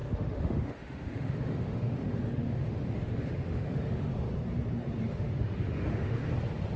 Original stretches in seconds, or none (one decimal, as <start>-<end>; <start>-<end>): 4.1-5.0; 6.2-6.8